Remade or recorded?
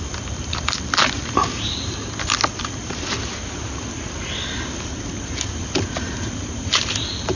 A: recorded